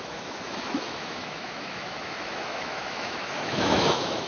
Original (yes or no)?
no